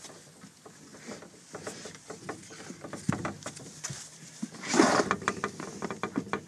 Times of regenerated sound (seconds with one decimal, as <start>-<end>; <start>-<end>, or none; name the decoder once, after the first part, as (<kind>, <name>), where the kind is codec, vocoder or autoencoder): none